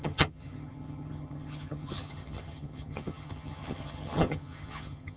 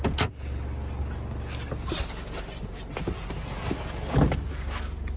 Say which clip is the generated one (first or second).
first